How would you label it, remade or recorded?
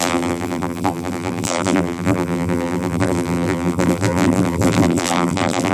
remade